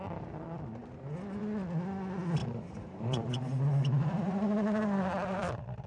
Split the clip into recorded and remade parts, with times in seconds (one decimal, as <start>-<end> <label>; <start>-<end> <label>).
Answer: 0.0-2.4 recorded; 2.4-5.9 remade